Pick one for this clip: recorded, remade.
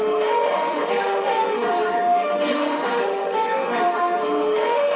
remade